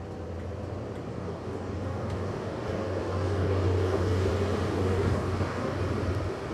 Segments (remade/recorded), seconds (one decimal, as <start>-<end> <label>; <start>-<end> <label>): 0.0-1.1 recorded; 1.1-4.3 remade; 4.3-4.7 recorded; 4.7-5.8 remade; 5.8-6.5 recorded